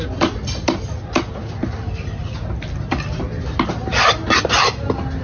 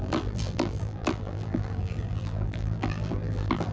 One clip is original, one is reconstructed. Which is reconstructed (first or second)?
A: second